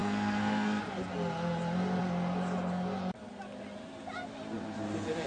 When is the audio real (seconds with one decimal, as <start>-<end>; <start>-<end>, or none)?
0.8-5.3